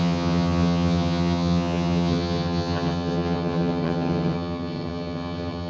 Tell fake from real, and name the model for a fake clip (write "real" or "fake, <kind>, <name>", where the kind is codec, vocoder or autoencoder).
fake, vocoder, HiFi-GAN